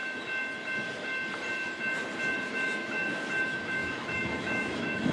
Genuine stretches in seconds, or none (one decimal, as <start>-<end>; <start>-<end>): 0.0-2.5